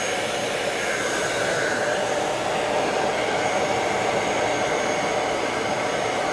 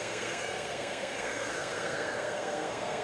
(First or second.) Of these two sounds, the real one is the first